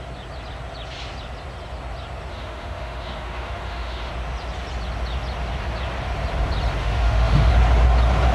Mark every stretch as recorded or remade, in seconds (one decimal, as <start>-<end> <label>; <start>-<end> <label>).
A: 0.0-2.3 recorded; 2.3-4.1 remade; 4.1-6.8 recorded; 6.8-7.5 remade; 7.5-8.3 recorded